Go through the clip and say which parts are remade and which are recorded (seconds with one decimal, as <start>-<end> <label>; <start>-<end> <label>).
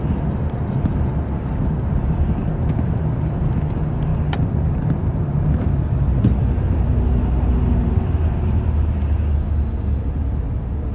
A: 0.0-2.4 recorded; 2.4-2.9 remade; 2.9-4.1 recorded; 4.1-7.2 remade; 7.2-10.9 recorded